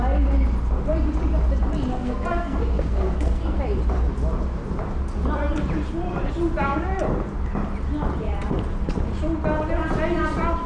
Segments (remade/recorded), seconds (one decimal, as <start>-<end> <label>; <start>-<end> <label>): 0.0-1.9 recorded; 1.9-3.6 remade; 3.6-10.7 recorded